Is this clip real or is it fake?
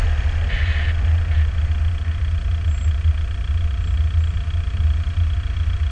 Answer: real